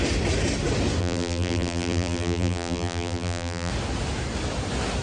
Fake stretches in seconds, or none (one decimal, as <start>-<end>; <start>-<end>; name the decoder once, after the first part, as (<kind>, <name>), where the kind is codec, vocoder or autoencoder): 1.0-3.7 (vocoder, BigVGAN v2)